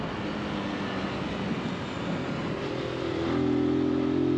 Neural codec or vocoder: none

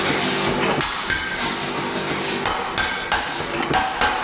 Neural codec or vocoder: none